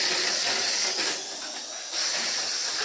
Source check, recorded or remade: recorded